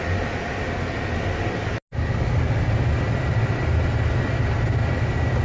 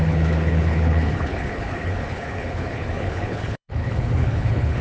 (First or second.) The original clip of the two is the first